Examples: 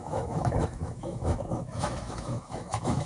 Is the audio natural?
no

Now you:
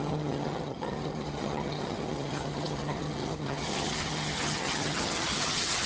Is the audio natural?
no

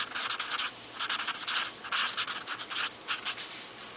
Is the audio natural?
yes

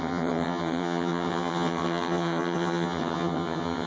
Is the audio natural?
no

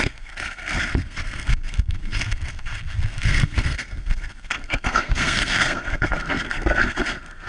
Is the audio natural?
no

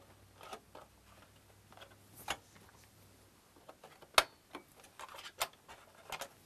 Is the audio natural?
yes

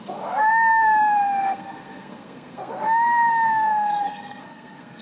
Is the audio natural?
no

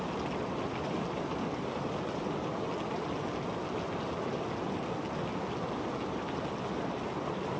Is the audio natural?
yes